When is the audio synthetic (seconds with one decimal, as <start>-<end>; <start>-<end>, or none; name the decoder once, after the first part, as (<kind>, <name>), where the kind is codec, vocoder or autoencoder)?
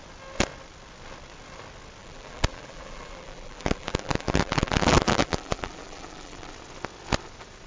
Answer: 2.0-6.5 (vocoder, BigVGAN v2)